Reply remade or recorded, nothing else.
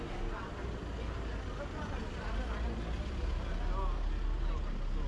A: recorded